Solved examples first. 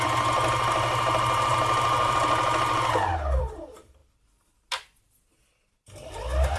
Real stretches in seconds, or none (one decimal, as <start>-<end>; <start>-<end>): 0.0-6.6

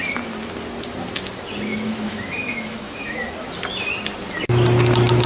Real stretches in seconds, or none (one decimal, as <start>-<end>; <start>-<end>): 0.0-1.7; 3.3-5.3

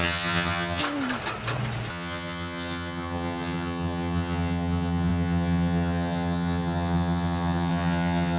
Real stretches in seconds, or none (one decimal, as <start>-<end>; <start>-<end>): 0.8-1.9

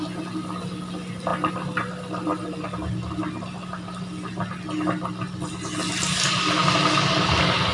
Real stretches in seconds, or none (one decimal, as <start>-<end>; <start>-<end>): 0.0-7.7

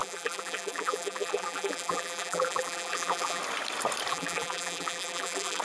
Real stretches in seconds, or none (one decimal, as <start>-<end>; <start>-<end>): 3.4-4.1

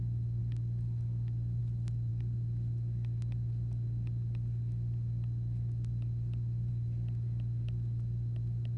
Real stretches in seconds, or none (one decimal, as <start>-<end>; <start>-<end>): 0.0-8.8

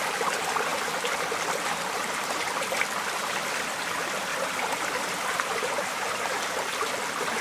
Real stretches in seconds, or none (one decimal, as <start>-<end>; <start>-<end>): 0.0-4.3; 6.4-7.4

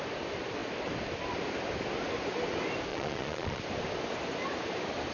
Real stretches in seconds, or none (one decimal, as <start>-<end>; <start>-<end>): 0.0-2.9; 3.6-5.1